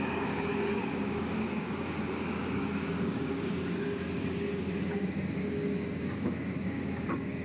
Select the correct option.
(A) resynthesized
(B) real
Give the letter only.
A